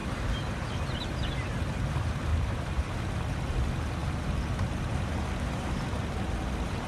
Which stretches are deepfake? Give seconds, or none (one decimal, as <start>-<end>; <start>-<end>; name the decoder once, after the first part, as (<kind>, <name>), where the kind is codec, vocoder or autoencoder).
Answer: 0.0-1.6 (vocoder, BigVGAN v2); 2.3-2.9